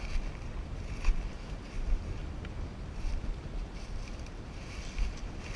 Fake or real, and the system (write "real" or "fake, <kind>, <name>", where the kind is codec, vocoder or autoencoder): real